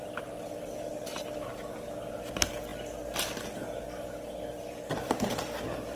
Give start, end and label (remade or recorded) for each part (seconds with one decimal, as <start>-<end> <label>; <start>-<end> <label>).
0.0-1.1 recorded; 1.1-1.9 remade; 1.9-6.0 recorded

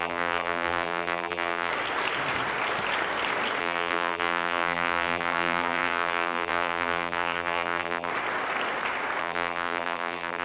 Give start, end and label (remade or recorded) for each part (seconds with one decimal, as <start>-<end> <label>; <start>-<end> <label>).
0.0-1.7 remade; 1.7-3.6 recorded; 3.6-8.1 remade; 8.1-9.2 recorded; 9.2-10.4 remade

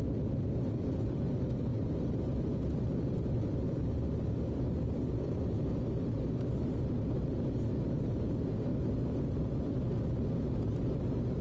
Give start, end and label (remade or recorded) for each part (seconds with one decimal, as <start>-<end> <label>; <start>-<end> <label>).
0.0-11.4 recorded

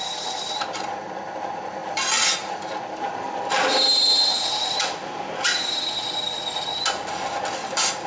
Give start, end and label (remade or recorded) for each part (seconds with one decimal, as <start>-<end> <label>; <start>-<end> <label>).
0.0-1.8 recorded; 1.8-5.2 remade; 5.2-8.1 recorded

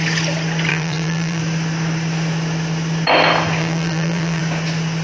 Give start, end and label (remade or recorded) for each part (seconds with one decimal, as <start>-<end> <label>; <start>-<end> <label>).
0.0-0.7 recorded; 0.7-1.4 remade; 1.4-3.6 recorded; 3.6-4.4 remade; 4.4-5.0 recorded

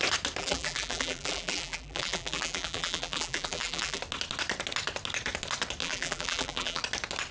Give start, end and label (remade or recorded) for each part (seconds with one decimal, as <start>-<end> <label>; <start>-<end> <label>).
0.0-0.4 recorded; 0.4-4.0 remade; 4.0-5.8 recorded; 5.8-6.8 remade; 6.8-7.3 recorded

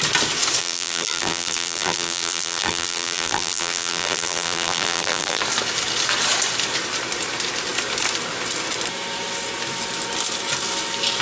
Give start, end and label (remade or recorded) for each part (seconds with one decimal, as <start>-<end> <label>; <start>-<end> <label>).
0.0-0.6 recorded; 0.6-5.4 remade; 5.4-11.2 recorded

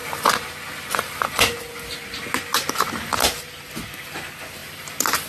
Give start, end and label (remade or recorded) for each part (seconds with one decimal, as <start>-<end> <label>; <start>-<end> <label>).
0.0-4.6 recorded; 4.6-5.3 remade